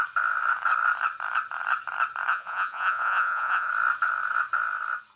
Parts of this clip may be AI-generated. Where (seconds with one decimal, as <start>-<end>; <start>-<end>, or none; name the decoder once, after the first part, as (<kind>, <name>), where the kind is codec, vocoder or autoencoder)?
2.3-3.7 (vocoder, Vocos)